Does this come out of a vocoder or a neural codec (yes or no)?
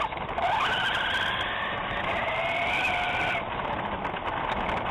yes